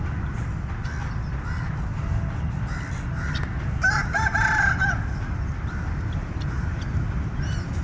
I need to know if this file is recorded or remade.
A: recorded